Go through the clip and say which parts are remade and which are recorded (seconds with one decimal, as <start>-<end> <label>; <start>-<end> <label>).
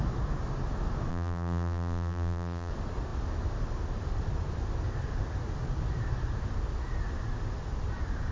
0.0-1.1 recorded; 1.1-2.7 remade; 2.7-8.3 recorded